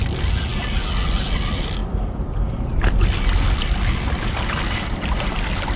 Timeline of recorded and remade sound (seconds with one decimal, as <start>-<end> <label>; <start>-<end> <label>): 0.0-5.8 recorded